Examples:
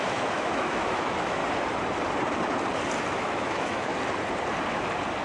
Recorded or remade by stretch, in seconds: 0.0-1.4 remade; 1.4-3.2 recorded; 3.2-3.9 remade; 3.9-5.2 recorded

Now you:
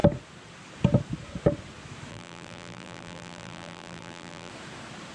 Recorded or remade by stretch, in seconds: 0.0-2.1 recorded; 2.1-4.5 remade; 4.5-5.1 recorded

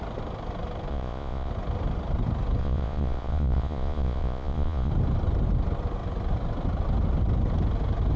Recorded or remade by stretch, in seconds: 0.0-0.9 recorded; 0.9-1.5 remade; 1.5-2.6 recorded; 2.6-4.9 remade; 4.9-8.2 recorded

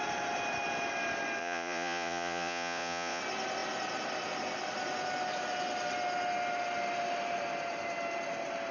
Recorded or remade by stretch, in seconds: 0.0-1.4 recorded; 1.4-3.2 remade; 3.2-8.7 recorded